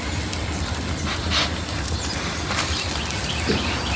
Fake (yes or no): no